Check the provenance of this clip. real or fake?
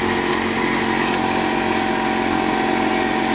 real